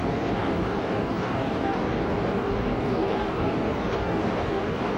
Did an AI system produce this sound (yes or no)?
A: yes